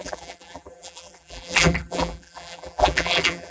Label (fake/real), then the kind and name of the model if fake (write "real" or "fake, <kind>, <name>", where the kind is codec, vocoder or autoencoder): fake, vocoder, BigVGAN v2